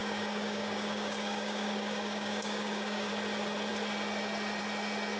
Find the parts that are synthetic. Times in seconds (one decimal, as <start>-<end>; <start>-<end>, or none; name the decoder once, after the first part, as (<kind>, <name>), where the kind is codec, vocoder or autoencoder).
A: 0.0-3.1 (codec, DAC)